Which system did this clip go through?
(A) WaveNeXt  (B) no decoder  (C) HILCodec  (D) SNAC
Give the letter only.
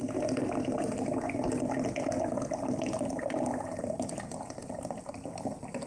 B